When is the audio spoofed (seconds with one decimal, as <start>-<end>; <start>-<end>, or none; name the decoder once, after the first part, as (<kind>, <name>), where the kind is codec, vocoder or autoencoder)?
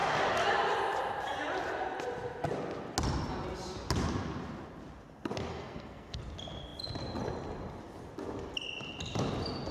5.5-6.2 (codec, SNAC)